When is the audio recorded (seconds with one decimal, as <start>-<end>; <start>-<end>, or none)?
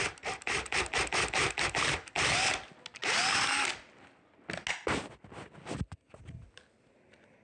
0.0-7.4